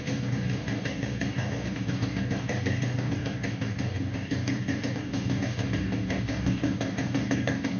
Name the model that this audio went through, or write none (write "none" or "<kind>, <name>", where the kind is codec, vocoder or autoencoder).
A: codec, DAC